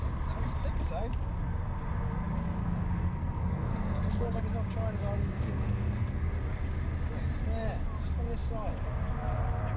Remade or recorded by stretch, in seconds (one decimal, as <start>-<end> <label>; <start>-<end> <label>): 0.0-2.6 recorded; 2.6-4.4 remade; 4.4-5.2 recorded; 5.2-6.3 remade; 6.3-9.8 recorded